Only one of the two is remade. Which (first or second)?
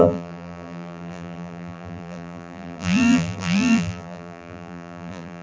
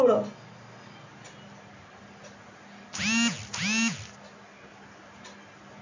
first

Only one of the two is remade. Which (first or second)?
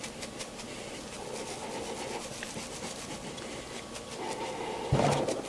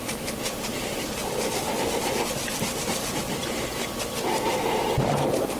second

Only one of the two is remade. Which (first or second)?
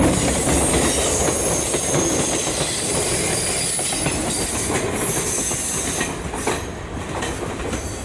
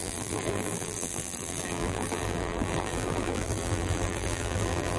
second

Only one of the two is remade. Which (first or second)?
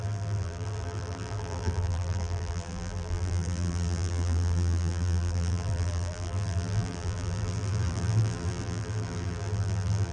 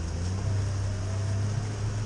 first